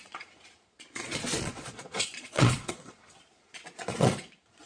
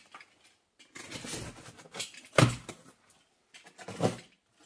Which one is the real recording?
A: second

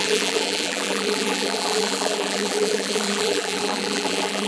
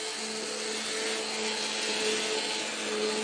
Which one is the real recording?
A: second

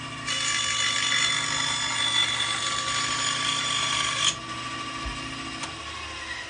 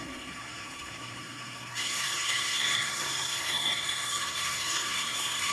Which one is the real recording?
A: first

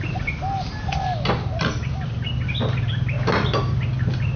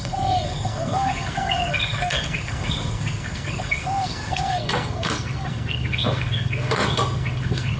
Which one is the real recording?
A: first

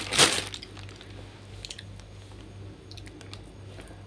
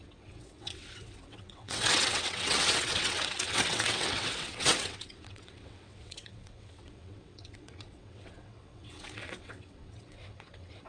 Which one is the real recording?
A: first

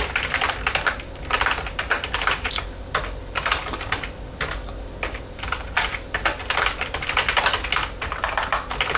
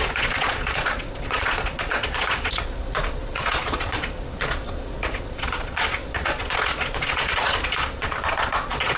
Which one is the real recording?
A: first